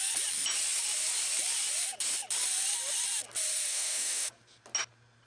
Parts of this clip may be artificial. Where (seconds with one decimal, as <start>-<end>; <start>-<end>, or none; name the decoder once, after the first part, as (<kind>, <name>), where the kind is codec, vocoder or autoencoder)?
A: 3.7-4.3 (autoencoder, DAC-VAE)